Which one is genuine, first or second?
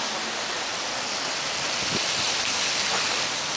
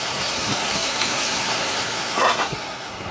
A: first